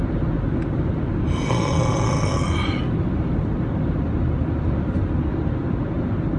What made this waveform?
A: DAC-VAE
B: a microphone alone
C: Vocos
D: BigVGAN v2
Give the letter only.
B